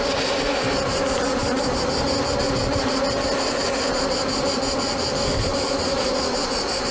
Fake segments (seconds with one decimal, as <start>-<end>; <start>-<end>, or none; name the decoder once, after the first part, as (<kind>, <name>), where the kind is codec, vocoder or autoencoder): 5.5-6.9 (vocoder, BigVGAN v2)